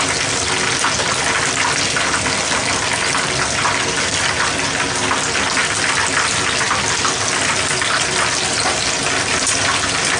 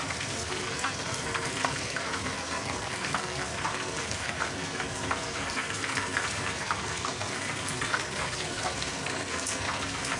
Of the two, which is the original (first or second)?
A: first